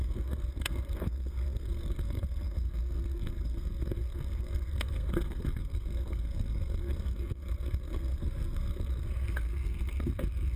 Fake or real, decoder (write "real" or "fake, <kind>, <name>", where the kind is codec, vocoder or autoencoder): fake, codec, SNAC